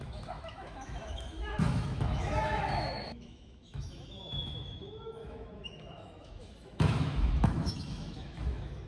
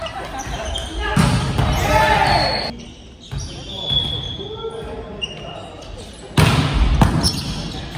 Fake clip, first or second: first